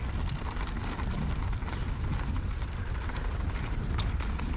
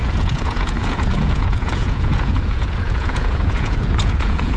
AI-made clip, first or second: second